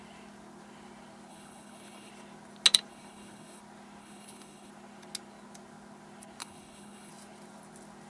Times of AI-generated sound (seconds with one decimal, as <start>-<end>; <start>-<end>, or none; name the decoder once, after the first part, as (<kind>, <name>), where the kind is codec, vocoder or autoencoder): 1.3-2.1 (codec, HILCodec); 2.9-3.6; 4.0-4.7; 6.4-7.1